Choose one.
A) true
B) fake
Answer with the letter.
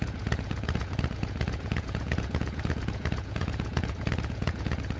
B